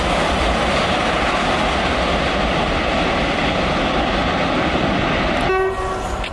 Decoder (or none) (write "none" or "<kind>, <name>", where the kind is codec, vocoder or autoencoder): none